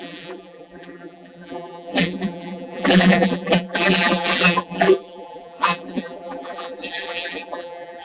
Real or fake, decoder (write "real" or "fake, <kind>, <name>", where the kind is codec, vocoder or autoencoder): fake, vocoder, BigVGAN v2